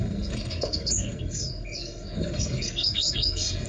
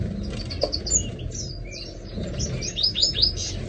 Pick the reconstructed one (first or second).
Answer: first